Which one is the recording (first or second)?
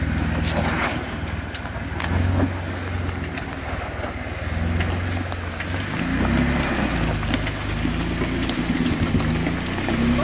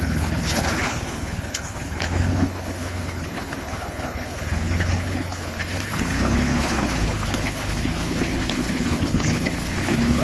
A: first